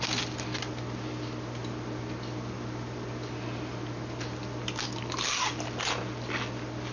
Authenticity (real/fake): real